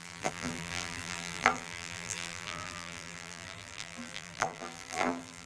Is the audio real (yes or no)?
no